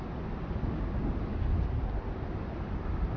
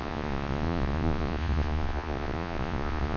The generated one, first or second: second